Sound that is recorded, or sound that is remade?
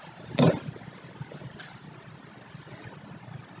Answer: recorded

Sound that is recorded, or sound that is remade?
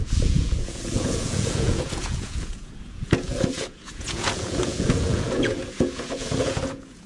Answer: remade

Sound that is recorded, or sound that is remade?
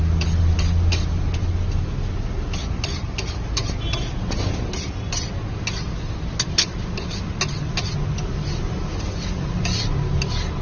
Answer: recorded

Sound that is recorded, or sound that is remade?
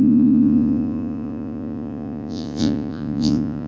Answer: remade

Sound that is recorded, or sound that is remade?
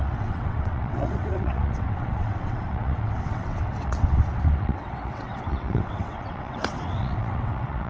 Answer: remade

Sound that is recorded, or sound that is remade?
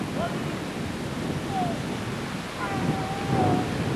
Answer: recorded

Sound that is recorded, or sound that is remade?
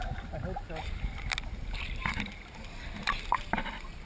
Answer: recorded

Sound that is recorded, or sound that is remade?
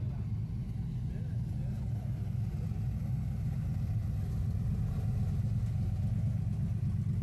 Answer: recorded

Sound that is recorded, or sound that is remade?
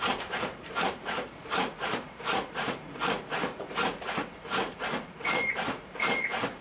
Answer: remade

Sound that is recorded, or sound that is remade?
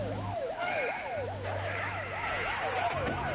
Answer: remade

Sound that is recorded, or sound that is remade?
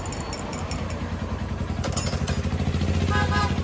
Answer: recorded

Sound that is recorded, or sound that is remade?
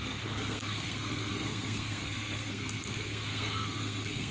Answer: remade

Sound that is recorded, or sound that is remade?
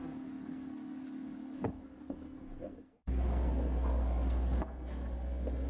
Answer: remade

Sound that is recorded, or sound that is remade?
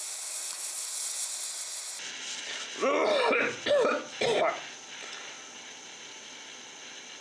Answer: recorded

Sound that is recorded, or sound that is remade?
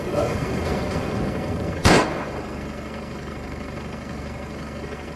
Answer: remade